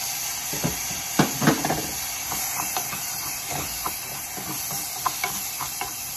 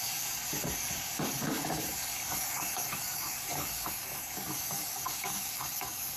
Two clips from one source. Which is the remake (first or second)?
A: second